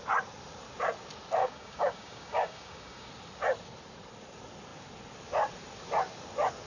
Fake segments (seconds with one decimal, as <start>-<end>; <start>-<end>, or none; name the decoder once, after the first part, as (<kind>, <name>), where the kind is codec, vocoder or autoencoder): 1.4-3.1 (codec, DAC)